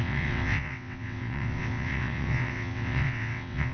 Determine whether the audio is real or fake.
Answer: fake